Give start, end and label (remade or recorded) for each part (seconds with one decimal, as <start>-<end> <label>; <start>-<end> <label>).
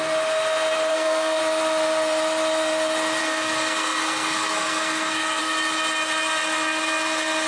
0.0-0.9 recorded; 0.9-1.4 remade; 1.4-3.2 recorded; 3.2-5.4 remade; 5.4-7.5 recorded